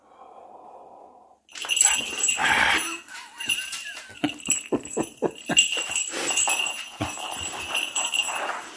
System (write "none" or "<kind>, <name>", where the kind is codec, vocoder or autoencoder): none